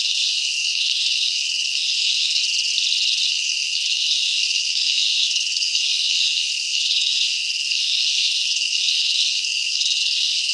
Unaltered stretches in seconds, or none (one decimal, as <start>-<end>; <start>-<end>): 2.4-3.3